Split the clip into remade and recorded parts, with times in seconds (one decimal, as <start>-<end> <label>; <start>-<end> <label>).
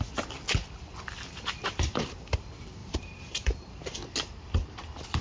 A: 0.0-2.8 recorded; 2.8-3.7 remade; 3.7-5.2 recorded